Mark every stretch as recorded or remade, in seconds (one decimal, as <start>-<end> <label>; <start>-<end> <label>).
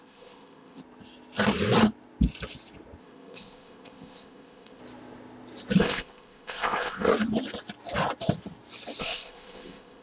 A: 0.0-0.8 remade; 0.8-3.0 recorded; 3.0-4.8 remade; 4.8-5.8 recorded; 5.8-7.1 remade; 7.1-9.0 recorded; 9.0-10.0 remade